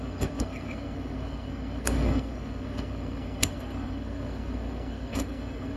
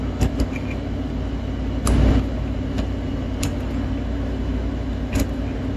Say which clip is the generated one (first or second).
first